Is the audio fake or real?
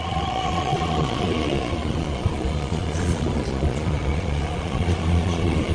fake